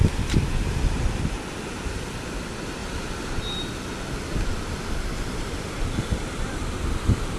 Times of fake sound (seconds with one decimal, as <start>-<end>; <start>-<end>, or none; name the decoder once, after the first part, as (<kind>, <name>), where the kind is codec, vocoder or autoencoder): 0.0-2.8 (vocoder, BigVGAN v2); 3.4-7.4